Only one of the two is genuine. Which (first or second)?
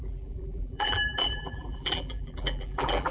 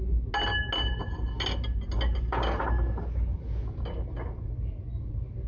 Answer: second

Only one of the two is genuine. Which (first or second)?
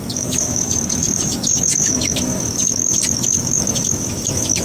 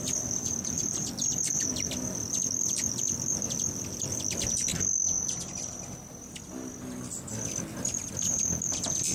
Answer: second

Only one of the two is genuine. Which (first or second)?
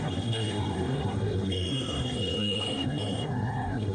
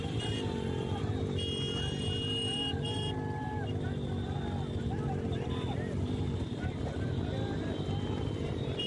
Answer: second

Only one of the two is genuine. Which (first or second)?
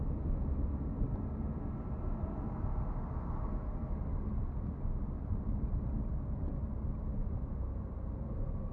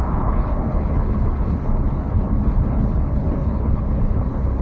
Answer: first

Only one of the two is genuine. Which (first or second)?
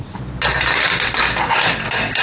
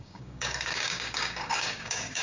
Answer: first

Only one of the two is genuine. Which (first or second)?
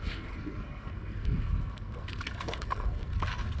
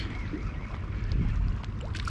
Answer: second